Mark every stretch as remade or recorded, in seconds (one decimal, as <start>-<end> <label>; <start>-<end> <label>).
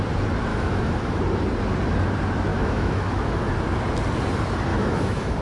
0.0-0.5 recorded; 0.5-1.2 remade; 1.2-2.5 recorded; 2.5-3.5 remade; 3.5-4.7 recorded; 4.7-5.4 remade